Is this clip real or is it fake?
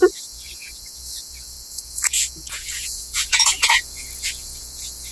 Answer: fake